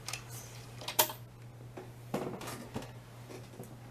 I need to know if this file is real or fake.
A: real